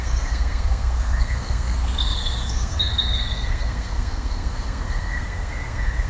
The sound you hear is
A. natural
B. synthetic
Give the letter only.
B